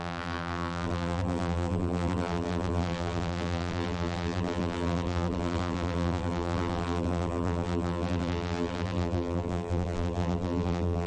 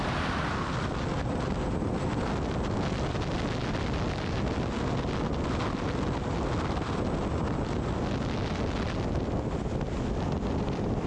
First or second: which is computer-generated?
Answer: first